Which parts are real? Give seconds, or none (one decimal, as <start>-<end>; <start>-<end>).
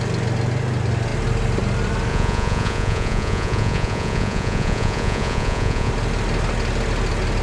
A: 0.0-2.1; 5.9-7.4